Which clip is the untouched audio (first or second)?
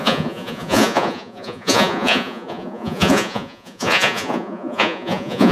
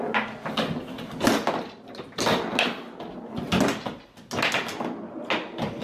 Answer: second